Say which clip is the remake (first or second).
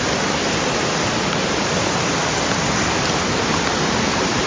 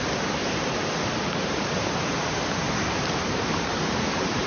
second